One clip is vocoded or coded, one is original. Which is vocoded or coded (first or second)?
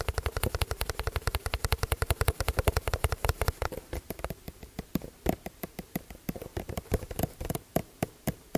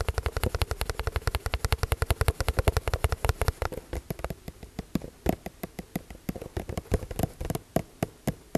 first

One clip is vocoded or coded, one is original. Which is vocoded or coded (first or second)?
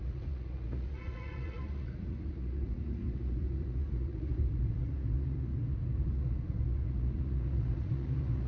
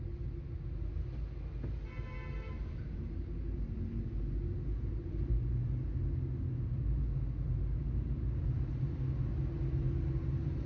first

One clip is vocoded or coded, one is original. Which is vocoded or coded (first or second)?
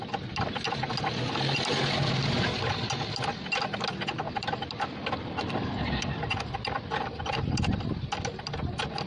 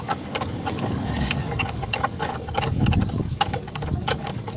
second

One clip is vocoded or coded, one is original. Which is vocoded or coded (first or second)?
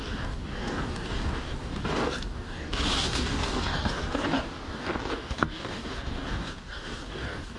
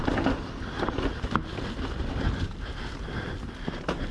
first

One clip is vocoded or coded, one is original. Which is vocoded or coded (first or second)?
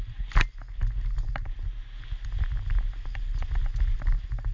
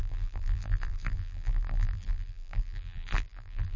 second